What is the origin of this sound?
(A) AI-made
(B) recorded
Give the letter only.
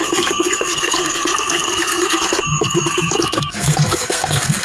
A